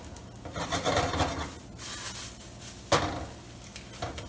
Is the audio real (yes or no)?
yes